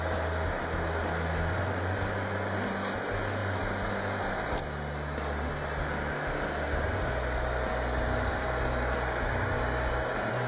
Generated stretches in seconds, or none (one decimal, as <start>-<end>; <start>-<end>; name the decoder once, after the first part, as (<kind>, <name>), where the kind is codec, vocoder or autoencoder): 3.4-3.9 (vocoder, BigVGAN v2)